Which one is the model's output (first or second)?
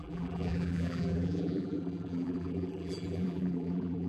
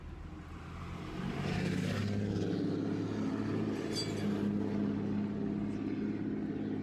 first